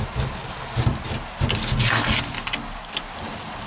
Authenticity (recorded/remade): recorded